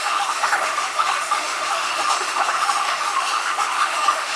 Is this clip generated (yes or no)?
yes